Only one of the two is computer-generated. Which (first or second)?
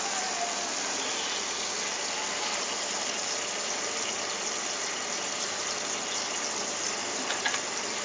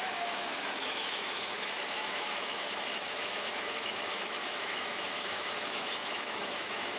second